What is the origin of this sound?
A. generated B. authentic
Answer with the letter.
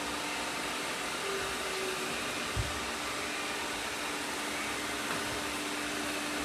B